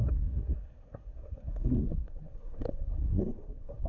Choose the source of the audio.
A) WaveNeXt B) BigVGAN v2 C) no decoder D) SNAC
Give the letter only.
D